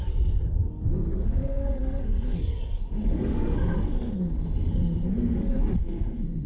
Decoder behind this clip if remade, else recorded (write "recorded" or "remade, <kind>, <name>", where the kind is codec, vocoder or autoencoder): remade, codec, SNAC